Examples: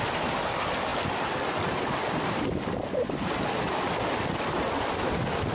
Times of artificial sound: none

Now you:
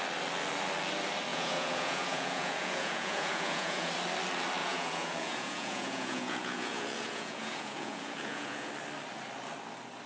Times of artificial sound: 1.3-3.9 (vocoder, Vocos); 4.6-8.7